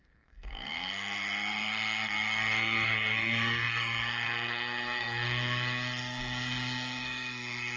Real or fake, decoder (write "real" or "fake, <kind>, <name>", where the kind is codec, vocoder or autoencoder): fake, codec, SNAC